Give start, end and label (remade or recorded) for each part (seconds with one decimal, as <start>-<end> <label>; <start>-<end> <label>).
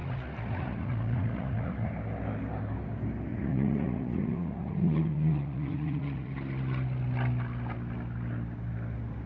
0.0-1.9 remade; 1.9-3.3 recorded; 3.3-6.3 remade; 6.3-9.3 recorded